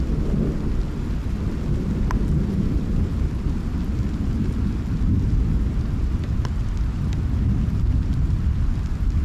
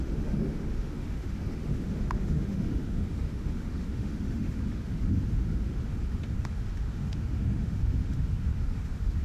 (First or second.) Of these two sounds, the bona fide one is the first